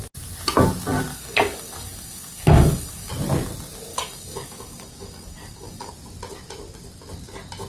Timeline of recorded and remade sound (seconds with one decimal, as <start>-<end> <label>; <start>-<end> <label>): 0.0-1.1 recorded; 1.1-3.1 remade; 3.1-3.9 recorded; 3.9-5.9 remade; 5.9-7.7 recorded